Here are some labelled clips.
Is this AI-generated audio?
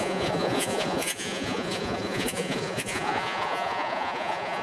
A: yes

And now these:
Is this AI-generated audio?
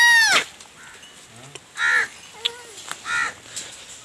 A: no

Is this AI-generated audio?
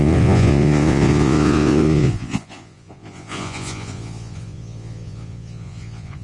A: yes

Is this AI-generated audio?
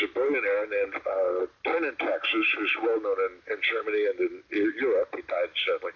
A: no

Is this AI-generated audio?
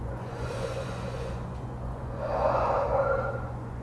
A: yes